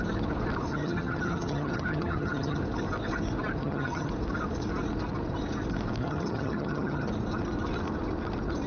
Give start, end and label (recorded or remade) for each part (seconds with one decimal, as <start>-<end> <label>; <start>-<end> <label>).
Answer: 0.0-0.7 recorded; 0.7-2.6 remade; 2.6-3.6 recorded; 3.6-4.1 remade; 4.1-6.0 recorded; 6.0-7.1 remade; 7.1-8.7 recorded